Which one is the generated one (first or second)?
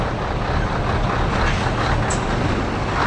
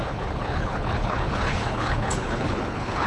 second